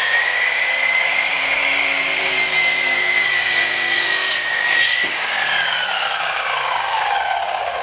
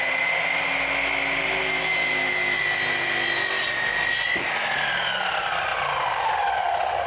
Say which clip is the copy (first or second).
first